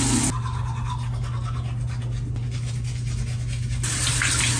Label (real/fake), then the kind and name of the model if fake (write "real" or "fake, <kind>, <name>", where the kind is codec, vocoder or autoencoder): real